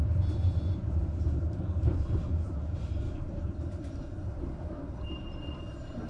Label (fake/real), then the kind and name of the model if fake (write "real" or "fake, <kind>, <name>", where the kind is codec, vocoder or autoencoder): fake, vocoder, BigVGAN v2